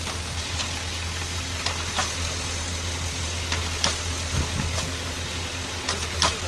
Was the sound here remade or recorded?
recorded